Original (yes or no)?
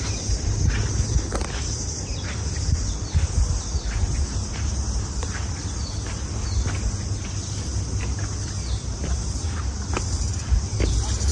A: yes